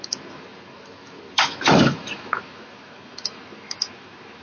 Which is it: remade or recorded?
remade